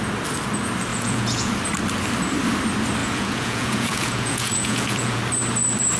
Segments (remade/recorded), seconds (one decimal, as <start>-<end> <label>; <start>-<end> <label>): 0.0-0.9 recorded; 0.9-1.5 remade; 1.5-3.0 recorded; 3.0-5.2 remade; 5.2-6.0 recorded